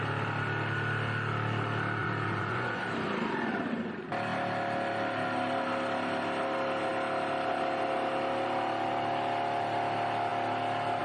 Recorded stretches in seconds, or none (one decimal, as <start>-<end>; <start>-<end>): 0.0-2.0; 2.8-11.0